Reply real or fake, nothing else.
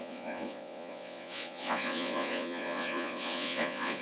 fake